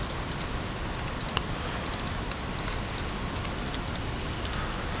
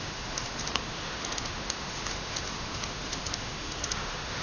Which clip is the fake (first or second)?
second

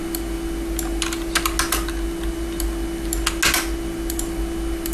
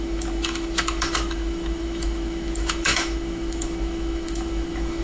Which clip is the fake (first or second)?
second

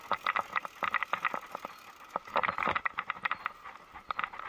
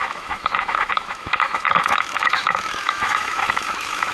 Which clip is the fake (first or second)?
second